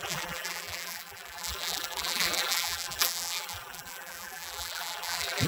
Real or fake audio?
fake